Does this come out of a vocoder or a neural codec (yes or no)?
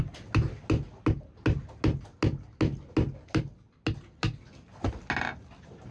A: no